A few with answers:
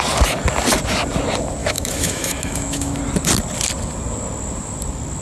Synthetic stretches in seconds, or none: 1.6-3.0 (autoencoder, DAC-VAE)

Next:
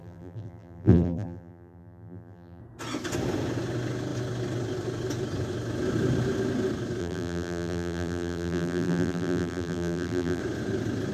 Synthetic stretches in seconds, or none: 0.0-2.6 (vocoder, BigVGAN v2); 7.0-10.4

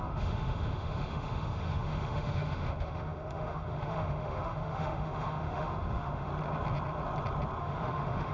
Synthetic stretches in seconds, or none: 0.0-6.3 (autoencoder, DAC-VAE); 7.6-8.3

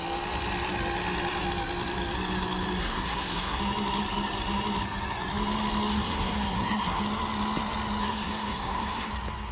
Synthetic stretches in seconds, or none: 2.8-3.6 (codec, SNAC); 5.9-7.0; 8.0-9.1